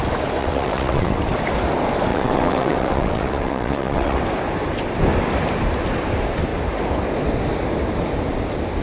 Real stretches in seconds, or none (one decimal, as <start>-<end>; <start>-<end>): 0.0-0.4; 1.2-2.1; 4.2-8.8